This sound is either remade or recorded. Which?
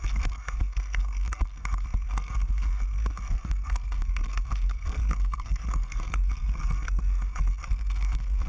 remade